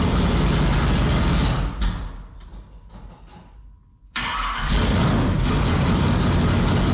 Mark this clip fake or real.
real